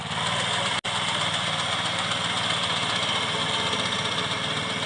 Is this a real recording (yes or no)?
yes